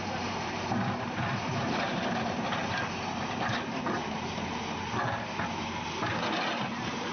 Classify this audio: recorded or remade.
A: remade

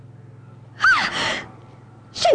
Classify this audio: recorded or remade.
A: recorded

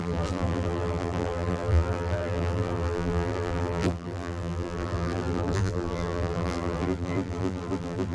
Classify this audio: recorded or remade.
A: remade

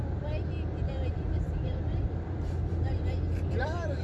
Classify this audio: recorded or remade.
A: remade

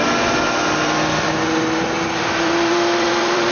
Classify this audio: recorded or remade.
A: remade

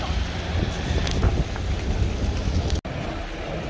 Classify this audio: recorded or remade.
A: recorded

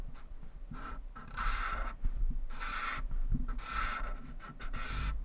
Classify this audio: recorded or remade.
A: remade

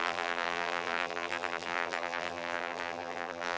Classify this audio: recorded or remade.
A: remade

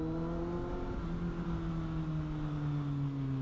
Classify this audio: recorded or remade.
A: recorded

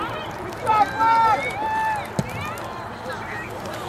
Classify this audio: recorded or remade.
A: recorded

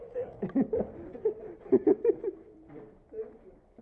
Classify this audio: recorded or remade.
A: remade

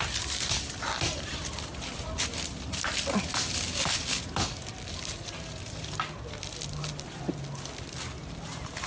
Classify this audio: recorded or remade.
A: remade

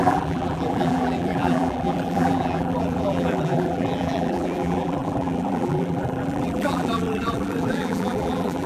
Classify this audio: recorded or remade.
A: remade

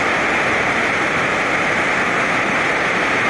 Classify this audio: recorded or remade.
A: remade